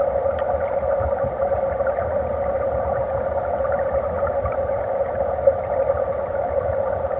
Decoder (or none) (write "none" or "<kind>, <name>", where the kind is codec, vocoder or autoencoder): none